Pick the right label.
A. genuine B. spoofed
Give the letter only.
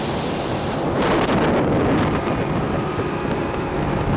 A